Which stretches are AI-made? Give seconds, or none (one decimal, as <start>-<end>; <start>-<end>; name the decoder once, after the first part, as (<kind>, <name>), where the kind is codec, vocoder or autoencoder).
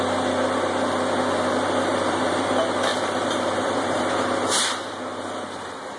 1.9-2.5 (vocoder, BigVGAN v2); 2.9-4.0